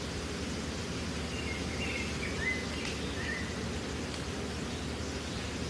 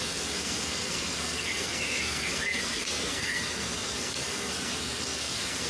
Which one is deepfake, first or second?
second